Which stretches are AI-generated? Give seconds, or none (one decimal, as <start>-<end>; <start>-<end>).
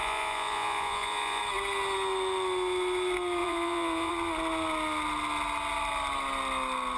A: 0.0-1.4; 3.4-4.1